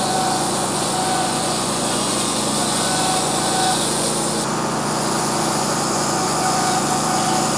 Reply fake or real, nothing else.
fake